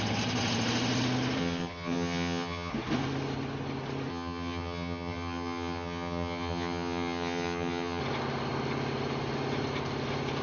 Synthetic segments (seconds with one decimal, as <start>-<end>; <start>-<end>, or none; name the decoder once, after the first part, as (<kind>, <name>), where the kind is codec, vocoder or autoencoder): 1.4-2.7 (vocoder, HiFi-GAN); 4.1-8.0